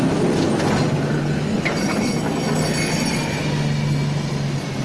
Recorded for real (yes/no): yes